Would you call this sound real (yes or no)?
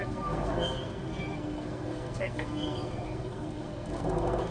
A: no